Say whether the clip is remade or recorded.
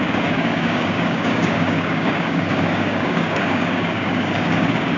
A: remade